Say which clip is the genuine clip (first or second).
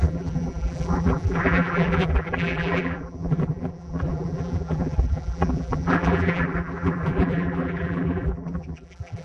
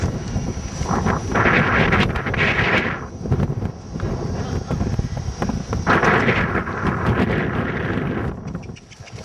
second